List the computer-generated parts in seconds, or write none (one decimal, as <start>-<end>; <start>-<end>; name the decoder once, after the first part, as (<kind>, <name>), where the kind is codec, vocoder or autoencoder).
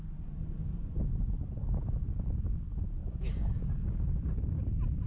3.0-4.2 (codec, DAC)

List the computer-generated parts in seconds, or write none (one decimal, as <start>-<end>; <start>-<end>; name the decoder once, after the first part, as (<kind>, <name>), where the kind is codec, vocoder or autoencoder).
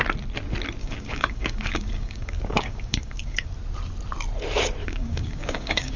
0.8-3.5 (codec, DAC); 4.8-6.0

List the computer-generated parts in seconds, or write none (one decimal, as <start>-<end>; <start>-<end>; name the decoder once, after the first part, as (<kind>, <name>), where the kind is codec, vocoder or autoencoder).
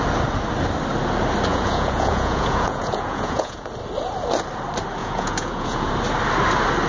1.5-3.7 (vocoder, Vocos); 5.0-5.9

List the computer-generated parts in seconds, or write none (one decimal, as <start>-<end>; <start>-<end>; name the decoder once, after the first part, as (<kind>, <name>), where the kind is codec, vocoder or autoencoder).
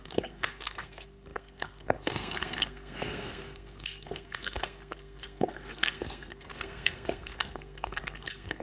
0.0-8.6 (codec, SNAC)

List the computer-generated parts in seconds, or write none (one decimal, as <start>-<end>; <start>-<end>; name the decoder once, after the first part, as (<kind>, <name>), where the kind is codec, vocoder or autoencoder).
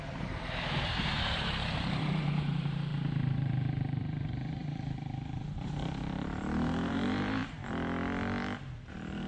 0.0-7.4 (vocoder, BigVGAN v2); 8.9-9.3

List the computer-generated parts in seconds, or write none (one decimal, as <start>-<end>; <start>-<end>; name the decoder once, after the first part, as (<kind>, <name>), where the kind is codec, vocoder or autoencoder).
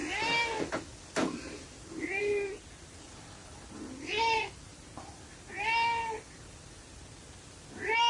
none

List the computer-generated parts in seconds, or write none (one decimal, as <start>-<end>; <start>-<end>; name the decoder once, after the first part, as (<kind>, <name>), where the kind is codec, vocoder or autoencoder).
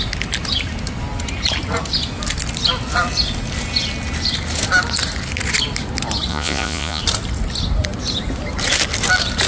6.3-7.0 (vocoder, Vocos)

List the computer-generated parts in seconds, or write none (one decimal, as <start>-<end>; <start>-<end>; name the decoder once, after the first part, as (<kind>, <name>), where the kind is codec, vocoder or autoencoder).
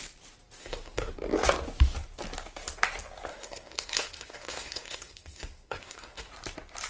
0.6-1.1 (codec, SNAC); 3.3-6.3